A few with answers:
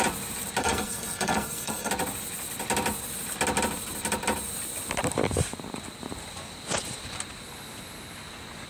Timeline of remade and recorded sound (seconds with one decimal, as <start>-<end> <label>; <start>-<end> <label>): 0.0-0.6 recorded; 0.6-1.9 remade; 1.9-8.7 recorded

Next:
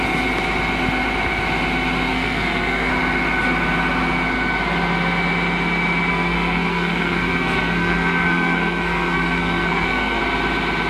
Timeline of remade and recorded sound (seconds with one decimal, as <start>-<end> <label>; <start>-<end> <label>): 0.0-2.1 recorded; 2.1-2.9 remade; 2.9-6.1 recorded; 6.1-10.2 remade; 10.2-10.9 recorded

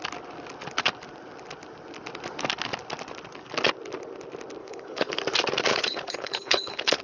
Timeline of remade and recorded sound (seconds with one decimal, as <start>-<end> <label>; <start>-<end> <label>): 0.0-4.6 recorded; 4.6-5.2 remade; 5.2-5.7 recorded; 5.7-7.0 remade

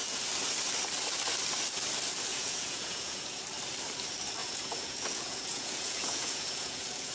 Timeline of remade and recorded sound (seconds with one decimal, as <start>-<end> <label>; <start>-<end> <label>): 0.0-2.3 recorded; 2.3-3.4 remade; 3.4-4.4 recorded; 4.4-7.1 remade

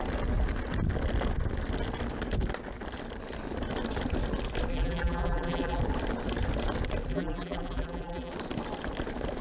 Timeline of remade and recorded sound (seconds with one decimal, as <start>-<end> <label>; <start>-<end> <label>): 0.0-4.7 recorded; 4.7-5.8 remade; 5.8-7.1 recorded; 7.1-8.3 remade; 8.3-9.4 recorded

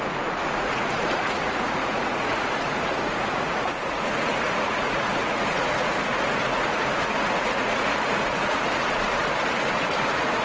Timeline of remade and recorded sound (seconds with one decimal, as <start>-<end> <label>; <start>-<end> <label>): 0.0-10.4 remade

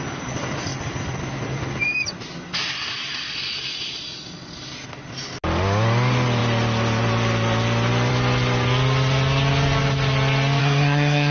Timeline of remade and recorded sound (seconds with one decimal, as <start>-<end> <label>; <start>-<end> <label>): 0.0-10.6 recorded; 10.6-11.3 remade